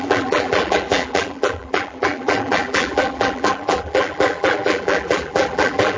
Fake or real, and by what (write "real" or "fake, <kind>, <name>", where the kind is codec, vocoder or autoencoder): fake, vocoder, BigVGAN v2